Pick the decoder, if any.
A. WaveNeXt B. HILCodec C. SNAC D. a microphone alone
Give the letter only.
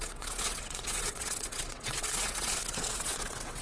A